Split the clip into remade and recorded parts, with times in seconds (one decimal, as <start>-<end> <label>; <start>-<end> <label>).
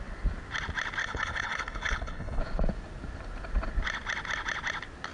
0.0-1.0 recorded; 1.0-2.4 remade; 2.4-5.1 recorded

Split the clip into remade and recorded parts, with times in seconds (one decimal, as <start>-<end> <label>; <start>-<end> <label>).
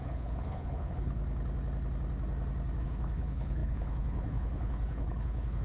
0.0-1.2 remade; 1.2-2.8 recorded; 2.8-5.6 remade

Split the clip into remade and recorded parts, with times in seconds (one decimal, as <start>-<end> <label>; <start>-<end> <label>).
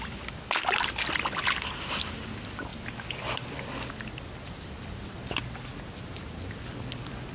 0.0-7.3 recorded